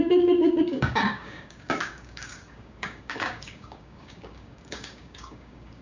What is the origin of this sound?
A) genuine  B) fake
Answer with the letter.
B